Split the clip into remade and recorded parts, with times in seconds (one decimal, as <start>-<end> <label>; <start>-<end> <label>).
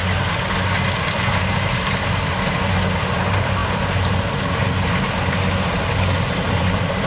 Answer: 0.0-1.1 recorded; 1.1-2.0 remade; 2.0-3.0 recorded; 3.0-7.1 remade